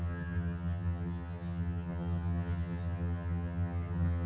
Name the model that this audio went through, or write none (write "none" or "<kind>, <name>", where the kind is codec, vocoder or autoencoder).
vocoder, HiFi-GAN